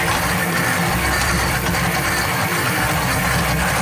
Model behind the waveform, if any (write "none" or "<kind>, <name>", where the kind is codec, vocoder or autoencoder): none